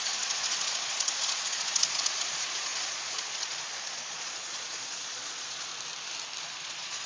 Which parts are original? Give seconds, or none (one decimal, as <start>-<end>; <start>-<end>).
5.7-6.4